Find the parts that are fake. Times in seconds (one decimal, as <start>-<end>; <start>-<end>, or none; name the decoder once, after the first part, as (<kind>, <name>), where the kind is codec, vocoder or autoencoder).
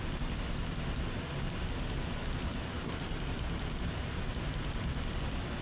none